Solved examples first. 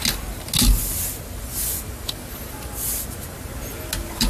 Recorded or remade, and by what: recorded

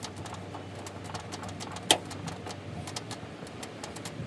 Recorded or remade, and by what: recorded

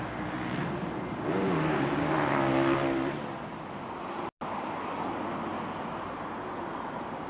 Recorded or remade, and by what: recorded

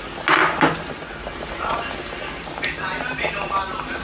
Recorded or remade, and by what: recorded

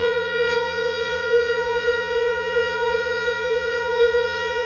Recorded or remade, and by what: remade, vocoder, Vocos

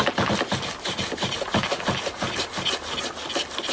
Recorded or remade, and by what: recorded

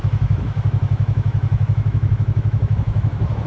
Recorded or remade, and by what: remade, autoencoder, DAC-VAE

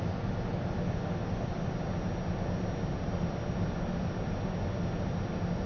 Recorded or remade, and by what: recorded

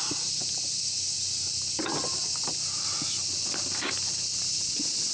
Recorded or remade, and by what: recorded